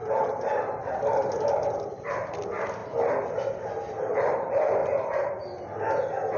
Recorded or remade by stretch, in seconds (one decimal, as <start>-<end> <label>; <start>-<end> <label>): 0.0-2.8 remade; 2.8-3.9 recorded; 3.9-4.8 remade; 4.8-6.4 recorded